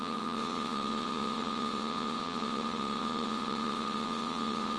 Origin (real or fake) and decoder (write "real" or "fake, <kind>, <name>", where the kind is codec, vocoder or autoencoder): fake, vocoder, WaveNeXt